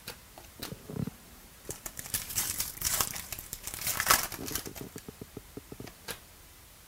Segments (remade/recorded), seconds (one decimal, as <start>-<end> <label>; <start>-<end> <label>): 0.0-3.9 remade; 3.9-4.5 recorded; 4.5-6.9 remade